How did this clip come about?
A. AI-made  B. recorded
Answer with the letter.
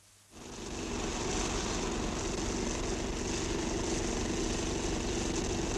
B